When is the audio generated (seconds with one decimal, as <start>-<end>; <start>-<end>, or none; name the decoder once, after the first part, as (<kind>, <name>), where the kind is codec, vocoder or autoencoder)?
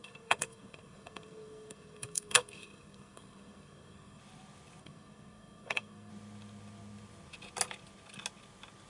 0.0-4.2 (codec, SNAC); 4.8-6.1